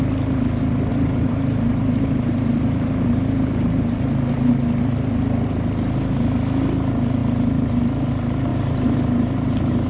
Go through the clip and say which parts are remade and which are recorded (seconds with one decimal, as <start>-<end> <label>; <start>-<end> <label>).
0.0-0.9 recorded; 0.9-4.5 remade; 4.5-7.2 recorded; 7.2-7.8 remade; 7.8-8.5 recorded; 8.5-9.9 remade